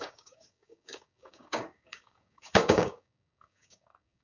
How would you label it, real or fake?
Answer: fake